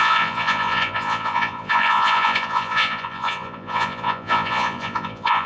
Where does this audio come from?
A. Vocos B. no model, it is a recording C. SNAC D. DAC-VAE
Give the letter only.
A